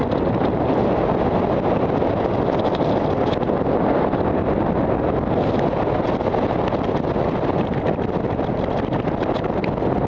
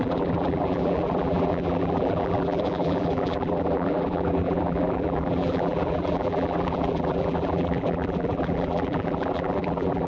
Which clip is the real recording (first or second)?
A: first